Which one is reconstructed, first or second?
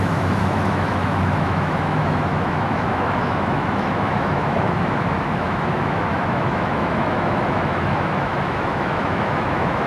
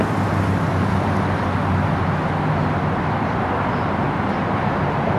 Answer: first